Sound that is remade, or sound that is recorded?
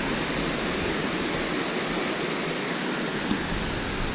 recorded